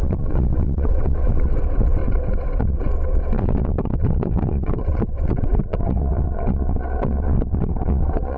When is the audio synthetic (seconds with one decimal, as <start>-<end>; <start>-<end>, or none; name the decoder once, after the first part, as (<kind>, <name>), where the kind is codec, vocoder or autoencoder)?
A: 0.0-8.4 (vocoder, WaveNeXt)